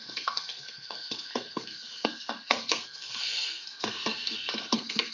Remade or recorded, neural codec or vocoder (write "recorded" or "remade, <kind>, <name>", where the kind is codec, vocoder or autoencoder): remade, codec, SNAC